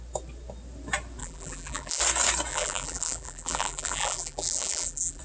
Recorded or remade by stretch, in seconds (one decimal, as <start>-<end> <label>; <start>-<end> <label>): 0.0-1.2 recorded; 1.2-2.0 remade; 2.0-2.5 recorded; 2.5-5.2 remade